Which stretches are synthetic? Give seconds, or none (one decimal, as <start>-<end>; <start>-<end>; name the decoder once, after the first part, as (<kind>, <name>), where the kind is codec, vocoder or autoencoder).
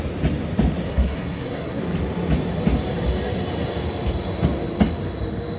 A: 0.9-1.8 (codec, SNAC)